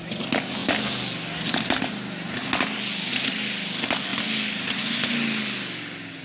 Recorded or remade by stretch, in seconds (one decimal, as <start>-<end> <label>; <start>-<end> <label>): 0.0-6.2 recorded